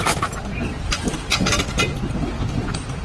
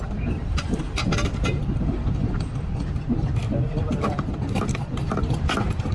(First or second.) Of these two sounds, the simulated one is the second